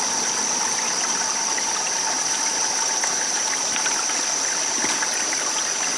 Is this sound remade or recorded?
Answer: recorded